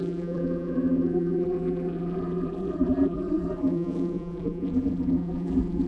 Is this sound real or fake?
fake